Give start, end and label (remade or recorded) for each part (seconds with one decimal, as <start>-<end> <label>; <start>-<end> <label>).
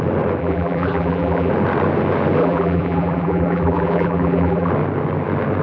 0.0-0.4 recorded; 0.4-1.5 remade; 1.5-2.4 recorded; 2.4-4.7 remade; 4.7-5.6 recorded